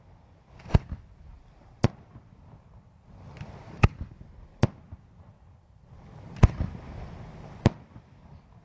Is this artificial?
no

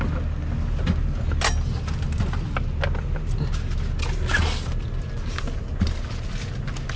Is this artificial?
no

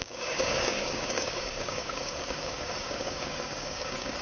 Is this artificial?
yes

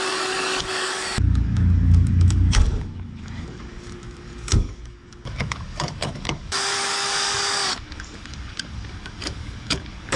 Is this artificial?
yes